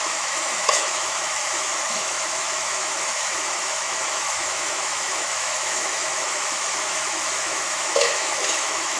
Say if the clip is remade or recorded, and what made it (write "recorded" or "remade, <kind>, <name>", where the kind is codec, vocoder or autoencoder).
remade, autoencoder, DAC-VAE